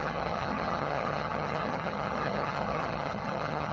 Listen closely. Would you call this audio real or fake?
fake